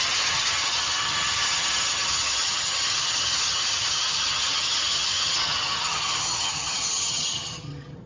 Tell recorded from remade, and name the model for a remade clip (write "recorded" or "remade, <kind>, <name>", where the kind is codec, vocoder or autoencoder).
remade, vocoder, HiFi-GAN